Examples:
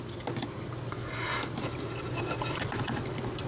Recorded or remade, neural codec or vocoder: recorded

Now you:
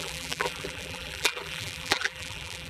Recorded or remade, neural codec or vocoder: remade, vocoder, BigVGAN v2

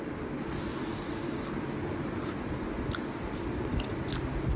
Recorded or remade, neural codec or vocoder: recorded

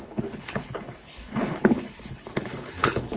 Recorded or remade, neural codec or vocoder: remade, codec, HILCodec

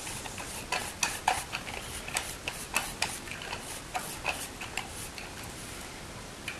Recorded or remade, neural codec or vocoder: recorded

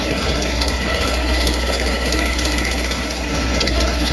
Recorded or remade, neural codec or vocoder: remade, codec, SNAC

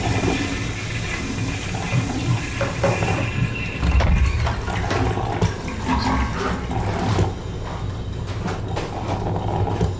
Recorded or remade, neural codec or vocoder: remade, vocoder, BigVGAN v2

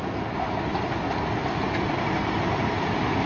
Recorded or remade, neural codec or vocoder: recorded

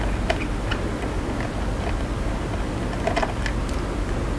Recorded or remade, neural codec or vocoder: recorded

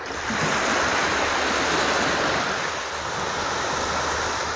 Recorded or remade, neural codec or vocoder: recorded